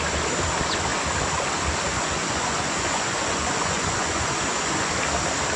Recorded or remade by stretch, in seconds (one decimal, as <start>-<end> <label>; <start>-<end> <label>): 0.0-1.9 recorded; 1.9-4.9 remade; 4.9-5.6 recorded